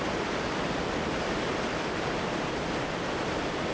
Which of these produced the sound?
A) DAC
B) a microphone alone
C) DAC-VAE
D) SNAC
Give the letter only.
B